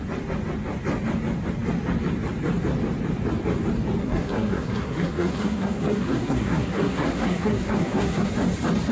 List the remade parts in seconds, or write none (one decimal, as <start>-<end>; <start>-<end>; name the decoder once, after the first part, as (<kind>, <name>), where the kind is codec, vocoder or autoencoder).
4.0-8.3 (codec, SNAC)